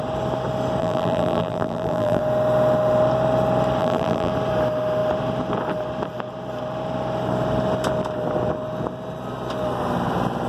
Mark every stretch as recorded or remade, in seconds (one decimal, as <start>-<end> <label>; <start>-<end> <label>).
0.0-0.8 recorded; 0.8-2.2 remade; 2.2-3.8 recorded; 3.8-4.3 remade; 4.3-10.5 recorded